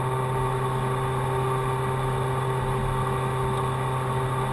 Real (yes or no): yes